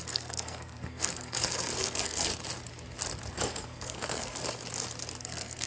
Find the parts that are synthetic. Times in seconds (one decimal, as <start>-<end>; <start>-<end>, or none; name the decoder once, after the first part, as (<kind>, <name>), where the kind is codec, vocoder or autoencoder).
0.0-2.3 (codec, SNAC); 3.3-4.4; 5.2-5.7